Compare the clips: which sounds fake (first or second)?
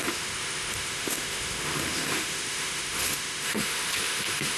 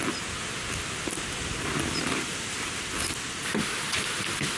first